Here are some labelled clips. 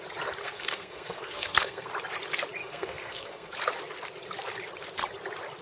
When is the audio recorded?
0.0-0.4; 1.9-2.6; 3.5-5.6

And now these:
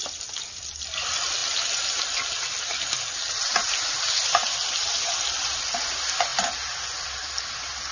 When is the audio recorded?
0.0-7.9

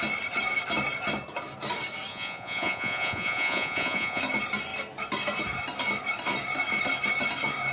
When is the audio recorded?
0.0-2.1; 4.2-7.7

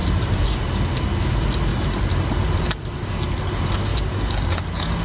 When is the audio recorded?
0.7-1.7; 3.1-3.9; 4.5-5.0

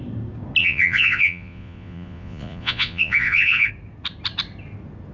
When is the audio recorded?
0.0-0.6; 3.7-5.1